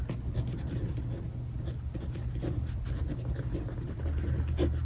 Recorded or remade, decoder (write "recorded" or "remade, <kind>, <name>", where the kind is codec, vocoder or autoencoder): recorded